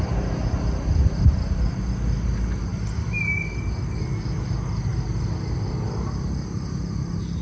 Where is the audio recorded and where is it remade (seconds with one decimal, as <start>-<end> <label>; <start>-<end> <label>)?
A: 0.0-7.4 recorded